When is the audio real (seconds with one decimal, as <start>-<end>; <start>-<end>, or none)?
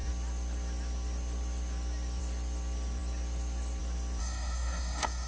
0.0-4.2